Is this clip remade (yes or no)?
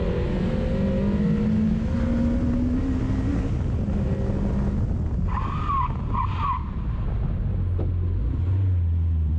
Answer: no